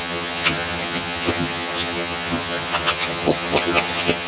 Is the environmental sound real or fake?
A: fake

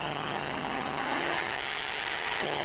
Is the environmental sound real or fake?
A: fake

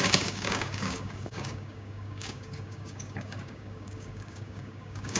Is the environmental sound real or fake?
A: fake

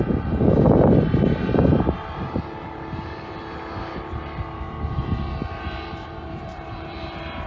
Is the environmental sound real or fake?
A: fake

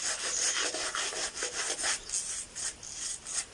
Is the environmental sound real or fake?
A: real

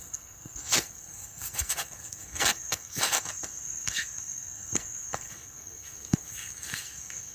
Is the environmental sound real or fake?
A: fake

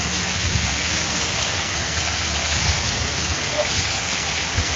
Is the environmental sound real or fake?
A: fake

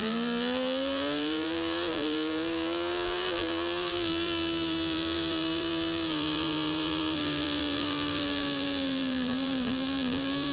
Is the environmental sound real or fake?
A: fake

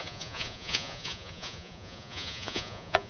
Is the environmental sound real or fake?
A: fake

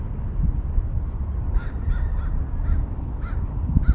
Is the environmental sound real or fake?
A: real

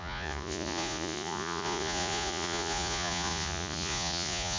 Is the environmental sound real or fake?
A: fake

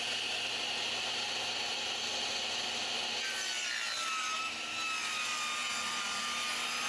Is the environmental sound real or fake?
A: real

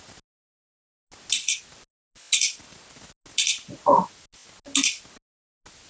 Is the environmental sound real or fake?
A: real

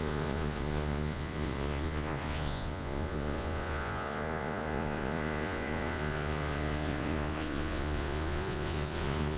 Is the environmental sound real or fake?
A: fake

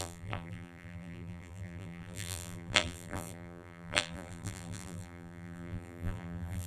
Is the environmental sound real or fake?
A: fake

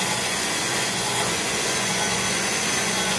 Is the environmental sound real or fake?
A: fake